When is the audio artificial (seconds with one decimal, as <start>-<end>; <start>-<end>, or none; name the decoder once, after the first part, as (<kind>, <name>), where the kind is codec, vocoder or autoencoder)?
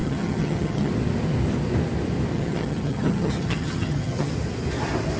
0.0-0.9 (vocoder, HiFi-GAN); 2.3-4.3